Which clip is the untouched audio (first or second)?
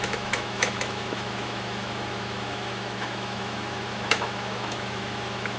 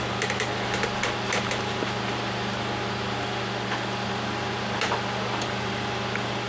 second